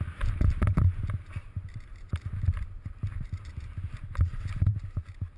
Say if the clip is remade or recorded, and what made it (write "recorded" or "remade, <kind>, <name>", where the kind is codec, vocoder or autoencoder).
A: remade, vocoder, BigVGAN v2